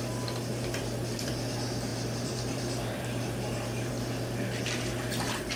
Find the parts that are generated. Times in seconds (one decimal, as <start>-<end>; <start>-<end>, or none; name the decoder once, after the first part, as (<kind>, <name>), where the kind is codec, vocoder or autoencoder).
0.5-1.3 (vocoder, BigVGAN v2); 1.9-3.9